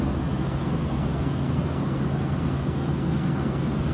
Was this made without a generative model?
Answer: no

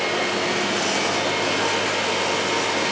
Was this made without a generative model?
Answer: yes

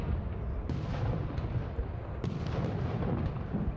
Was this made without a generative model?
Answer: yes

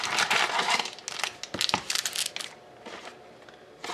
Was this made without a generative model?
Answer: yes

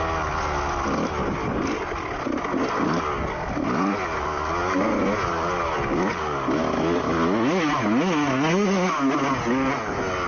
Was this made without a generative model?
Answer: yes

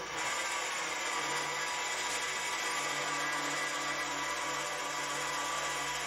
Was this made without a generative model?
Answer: yes